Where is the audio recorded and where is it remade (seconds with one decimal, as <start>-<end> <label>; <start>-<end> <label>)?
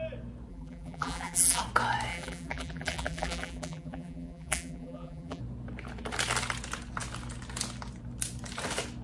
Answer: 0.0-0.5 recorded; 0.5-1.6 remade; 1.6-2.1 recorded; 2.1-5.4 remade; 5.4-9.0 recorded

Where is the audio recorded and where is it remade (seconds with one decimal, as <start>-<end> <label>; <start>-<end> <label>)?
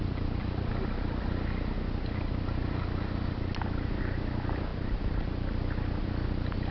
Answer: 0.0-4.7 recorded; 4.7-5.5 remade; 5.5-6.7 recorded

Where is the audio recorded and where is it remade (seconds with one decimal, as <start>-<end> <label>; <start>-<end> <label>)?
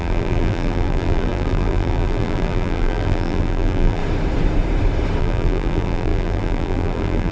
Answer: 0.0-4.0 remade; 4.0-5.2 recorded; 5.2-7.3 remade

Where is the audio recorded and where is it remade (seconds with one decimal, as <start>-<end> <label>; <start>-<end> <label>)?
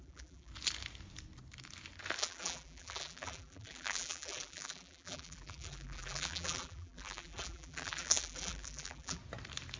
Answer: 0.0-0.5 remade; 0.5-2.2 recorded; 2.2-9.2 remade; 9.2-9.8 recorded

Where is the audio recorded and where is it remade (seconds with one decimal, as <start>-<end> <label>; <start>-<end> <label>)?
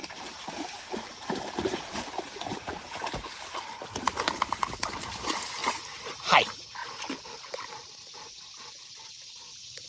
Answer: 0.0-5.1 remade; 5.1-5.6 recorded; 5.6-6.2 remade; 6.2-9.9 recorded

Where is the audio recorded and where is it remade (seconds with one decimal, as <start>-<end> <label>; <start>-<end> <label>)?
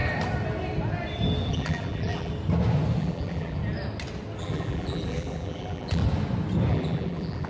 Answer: 0.0-1.5 recorded; 1.5-2.3 remade; 2.3-3.0 recorded; 3.0-3.6 remade; 3.6-4.4 recorded; 4.4-6.0 remade; 6.0-6.7 recorded; 6.7-7.5 remade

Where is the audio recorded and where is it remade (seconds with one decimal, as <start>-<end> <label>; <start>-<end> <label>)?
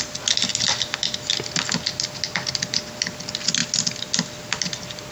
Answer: 0.0-5.1 recorded